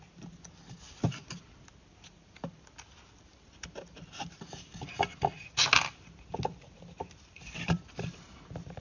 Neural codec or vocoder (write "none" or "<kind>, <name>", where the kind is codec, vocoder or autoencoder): none